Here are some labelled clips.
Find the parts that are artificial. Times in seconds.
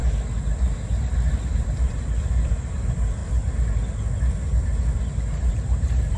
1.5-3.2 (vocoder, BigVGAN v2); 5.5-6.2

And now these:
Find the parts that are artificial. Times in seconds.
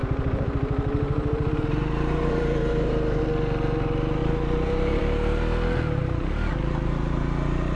0.0-3.2 (vocoder, BigVGAN v2); 4.2-5.0